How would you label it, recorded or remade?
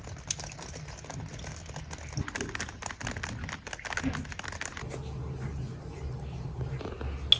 recorded